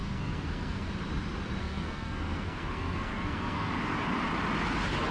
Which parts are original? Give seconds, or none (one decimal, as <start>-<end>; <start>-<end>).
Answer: 0.9-1.6; 3.7-5.1